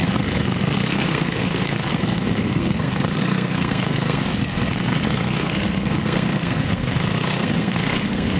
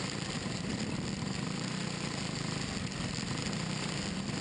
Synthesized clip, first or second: first